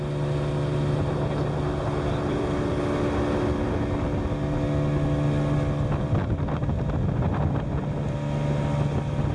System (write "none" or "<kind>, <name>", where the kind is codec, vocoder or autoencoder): none